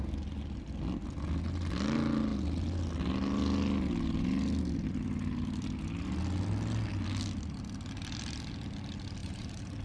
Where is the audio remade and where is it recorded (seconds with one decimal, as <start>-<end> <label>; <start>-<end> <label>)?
0.0-9.2 recorded; 9.2-9.8 remade